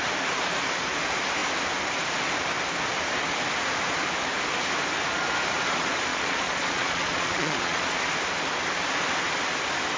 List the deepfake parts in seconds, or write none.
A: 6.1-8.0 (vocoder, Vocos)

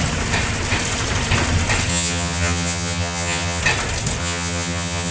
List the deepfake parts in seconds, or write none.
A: 1.9-3.6 (vocoder, HiFi-GAN); 4.2-5.1

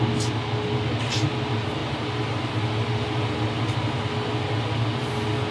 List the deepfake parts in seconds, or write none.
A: none

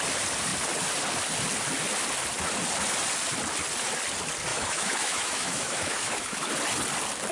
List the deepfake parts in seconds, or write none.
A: 4.5-6.5 (autoencoder, DAC-VAE)

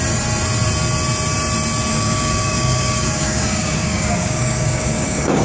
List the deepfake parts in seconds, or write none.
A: 1.9-5.4 (codec, DAC)

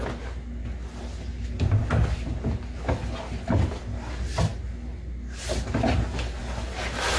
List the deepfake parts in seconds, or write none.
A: none

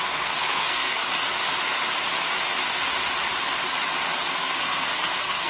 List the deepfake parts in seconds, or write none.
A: 0.0-1.0 (codec, SNAC); 4.3-5.5

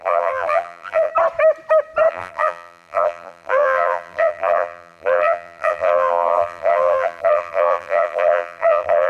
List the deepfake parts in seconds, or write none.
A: 0.0-1.1 (vocoder, BigVGAN v2); 2.1-9.1